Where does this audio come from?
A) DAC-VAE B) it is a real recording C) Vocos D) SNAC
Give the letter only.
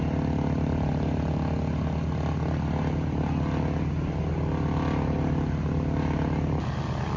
B